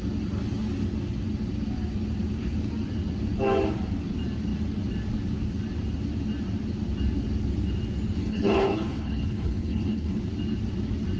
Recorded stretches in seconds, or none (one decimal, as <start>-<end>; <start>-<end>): 0.0-8.2; 10.2-11.2